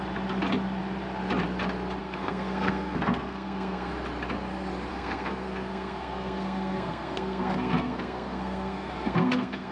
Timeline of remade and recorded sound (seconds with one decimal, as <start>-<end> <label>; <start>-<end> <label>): 0.0-2.0 recorded; 2.0-3.9 remade; 3.9-4.9 recorded; 4.9-9.7 remade